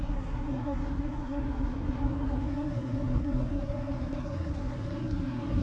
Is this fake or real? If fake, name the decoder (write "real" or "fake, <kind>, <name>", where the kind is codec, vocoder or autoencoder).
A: fake, codec, SNAC